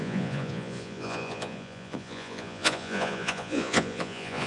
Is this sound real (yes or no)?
no